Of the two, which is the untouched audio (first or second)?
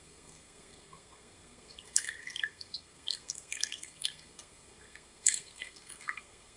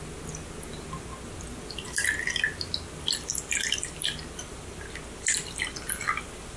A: second